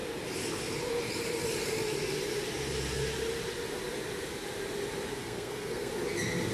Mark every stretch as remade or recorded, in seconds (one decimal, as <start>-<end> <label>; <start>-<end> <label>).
0.0-5.1 recorded; 5.1-5.9 remade; 5.9-6.5 recorded